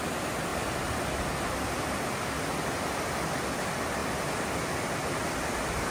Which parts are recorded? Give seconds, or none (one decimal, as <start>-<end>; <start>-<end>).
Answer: 0.0-5.9